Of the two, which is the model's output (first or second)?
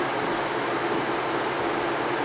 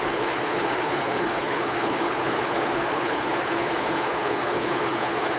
second